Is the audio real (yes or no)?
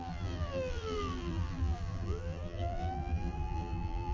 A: no